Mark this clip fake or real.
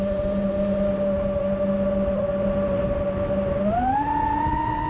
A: real